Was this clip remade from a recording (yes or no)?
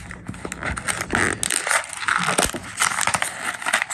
no